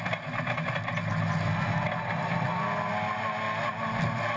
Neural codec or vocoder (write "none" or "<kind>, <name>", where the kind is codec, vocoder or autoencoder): none